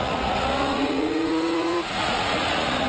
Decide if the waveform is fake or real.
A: fake